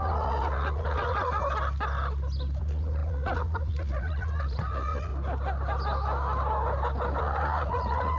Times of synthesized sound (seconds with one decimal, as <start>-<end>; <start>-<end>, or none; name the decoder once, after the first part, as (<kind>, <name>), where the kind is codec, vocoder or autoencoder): 0.0-1.4 (vocoder, Vocos); 2.6-5.1; 7.2-8.2